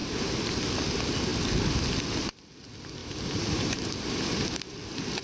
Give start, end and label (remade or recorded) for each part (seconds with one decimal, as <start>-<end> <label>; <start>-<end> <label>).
0.0-3.0 recorded; 3.0-4.2 remade; 4.2-5.2 recorded